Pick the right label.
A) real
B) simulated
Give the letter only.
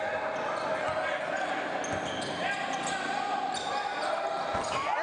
A